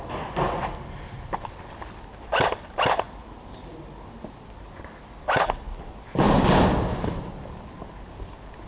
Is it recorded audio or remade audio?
recorded